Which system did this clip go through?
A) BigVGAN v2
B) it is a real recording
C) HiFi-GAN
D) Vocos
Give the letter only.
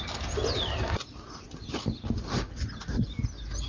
B